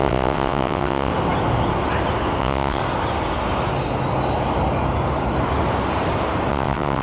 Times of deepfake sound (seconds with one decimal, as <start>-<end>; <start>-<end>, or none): 0.0-1.1; 2.4-2.8; 6.5-7.0